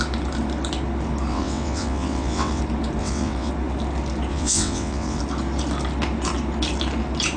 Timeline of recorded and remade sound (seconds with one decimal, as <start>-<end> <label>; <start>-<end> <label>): 0.0-1.3 recorded; 1.3-2.6 remade; 2.6-3.0 recorded; 3.0-3.5 remade; 3.5-4.3 recorded; 4.3-5.2 remade; 5.2-7.4 recorded

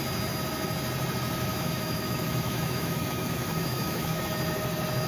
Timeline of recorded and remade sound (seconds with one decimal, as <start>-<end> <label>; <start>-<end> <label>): 0.0-1.5 recorded; 1.5-4.2 remade; 4.2-5.1 recorded

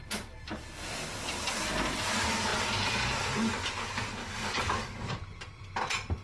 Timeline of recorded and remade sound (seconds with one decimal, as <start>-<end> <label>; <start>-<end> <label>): 0.0-4.2 recorded; 4.2-5.1 remade; 5.1-6.2 recorded